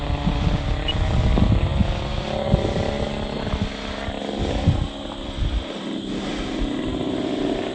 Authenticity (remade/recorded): recorded